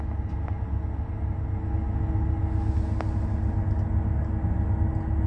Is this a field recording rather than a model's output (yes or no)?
yes